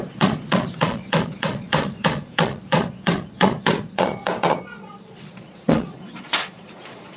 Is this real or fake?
fake